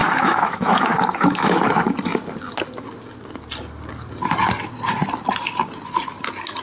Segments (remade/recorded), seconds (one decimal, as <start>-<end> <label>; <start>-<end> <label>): 0.0-1.6 remade; 1.6-6.6 recorded

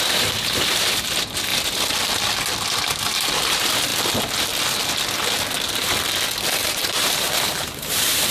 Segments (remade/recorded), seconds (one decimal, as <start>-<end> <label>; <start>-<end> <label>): 0.0-1.5 remade; 1.5-2.9 recorded; 2.9-3.9 remade; 3.9-6.5 recorded; 6.5-8.3 remade

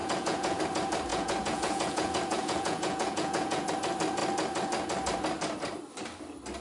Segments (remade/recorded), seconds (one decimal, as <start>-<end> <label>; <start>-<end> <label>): 0.0-0.6 remade; 0.6-1.1 recorded; 1.1-3.7 remade; 3.7-6.6 recorded

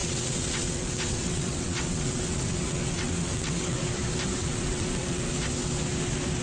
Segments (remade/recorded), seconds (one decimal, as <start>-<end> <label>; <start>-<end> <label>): 0.0-3.8 remade; 3.8-4.4 recorded; 4.4-5.3 remade; 5.3-6.4 recorded

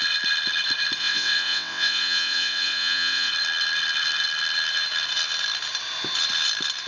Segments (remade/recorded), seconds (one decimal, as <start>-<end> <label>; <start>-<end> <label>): 0.0-1.0 recorded; 1.0-3.3 remade; 3.3-6.9 recorded

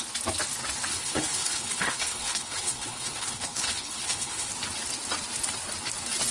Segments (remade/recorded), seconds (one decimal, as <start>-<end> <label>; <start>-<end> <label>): 0.0-0.9 recorded; 0.9-4.5 remade; 4.5-6.3 recorded